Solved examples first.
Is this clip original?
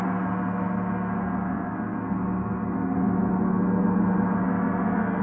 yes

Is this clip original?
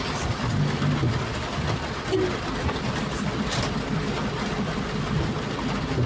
yes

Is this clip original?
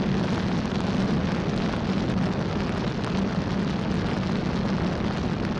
yes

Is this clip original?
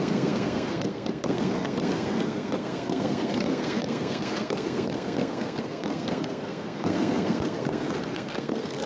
no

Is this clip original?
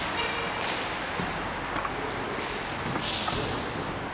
yes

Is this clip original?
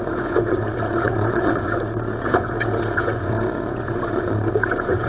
no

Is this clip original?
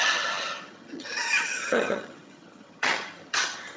no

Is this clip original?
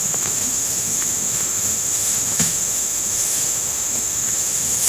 no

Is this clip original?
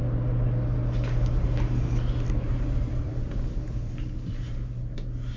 yes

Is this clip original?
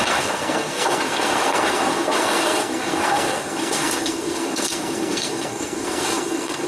no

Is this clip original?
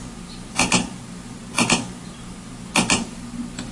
yes